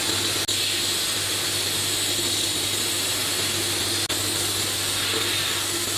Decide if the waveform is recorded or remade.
recorded